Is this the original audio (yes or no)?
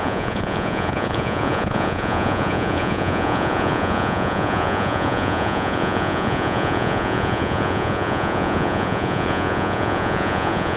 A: no